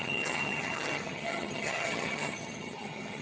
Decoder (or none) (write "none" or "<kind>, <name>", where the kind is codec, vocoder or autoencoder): vocoder, HiFi-GAN